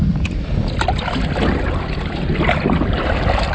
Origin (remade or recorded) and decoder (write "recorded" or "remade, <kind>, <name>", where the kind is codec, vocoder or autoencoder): recorded